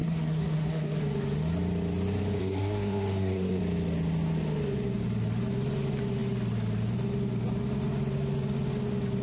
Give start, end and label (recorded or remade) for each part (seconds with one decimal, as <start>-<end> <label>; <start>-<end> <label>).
0.0-1.0 remade; 1.0-2.4 recorded; 2.4-3.6 remade; 3.6-9.2 recorded